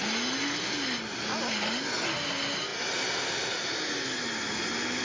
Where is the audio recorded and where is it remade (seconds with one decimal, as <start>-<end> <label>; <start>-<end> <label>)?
0.0-5.0 recorded